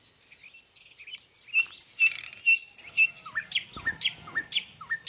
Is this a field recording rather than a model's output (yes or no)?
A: yes